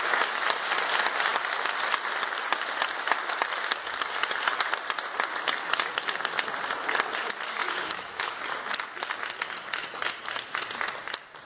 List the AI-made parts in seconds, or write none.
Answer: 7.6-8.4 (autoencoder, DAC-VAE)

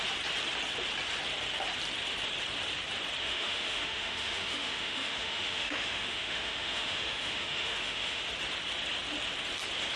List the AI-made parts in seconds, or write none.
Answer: 3.2-8.2 (autoencoder, DAC-VAE)

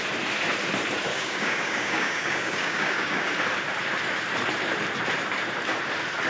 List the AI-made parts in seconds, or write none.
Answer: 1.1-3.3 (codec, DAC)

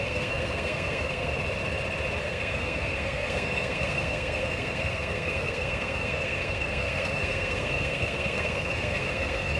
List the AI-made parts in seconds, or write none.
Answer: 0.0-1.3 (codec, SNAC); 2.2-9.6

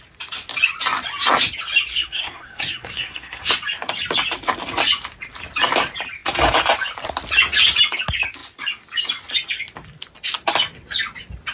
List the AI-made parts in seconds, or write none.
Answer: 1.9-3.5 (codec, SNAC)